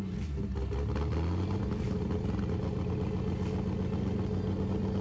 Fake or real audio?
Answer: real